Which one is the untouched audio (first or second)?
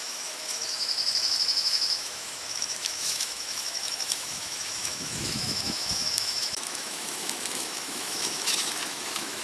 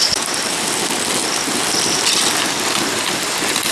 second